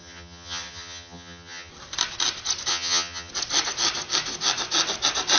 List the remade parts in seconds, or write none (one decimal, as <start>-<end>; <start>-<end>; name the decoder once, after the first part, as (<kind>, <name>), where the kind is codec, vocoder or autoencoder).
0.0-1.7 (vocoder, HiFi-GAN); 2.7-3.3